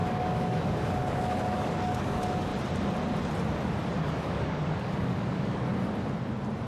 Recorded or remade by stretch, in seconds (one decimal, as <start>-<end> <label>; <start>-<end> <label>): 0.0-2.5 remade; 2.5-3.9 recorded; 3.9-5.7 remade; 5.7-6.7 recorded